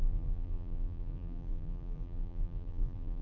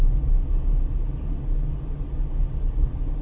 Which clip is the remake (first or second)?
first